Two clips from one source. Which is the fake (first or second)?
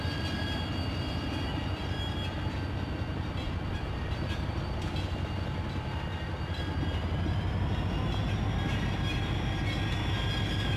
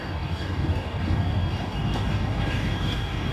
second